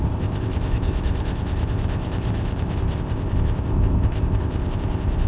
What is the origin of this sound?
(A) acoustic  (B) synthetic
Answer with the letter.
B